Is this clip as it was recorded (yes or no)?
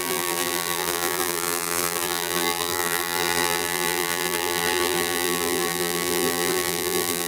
no